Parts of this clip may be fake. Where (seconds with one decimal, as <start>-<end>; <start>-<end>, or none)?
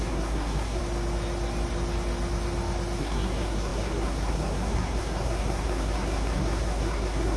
0.0-0.8; 3.0-7.4